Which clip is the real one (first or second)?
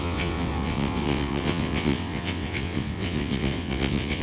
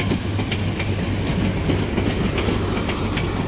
second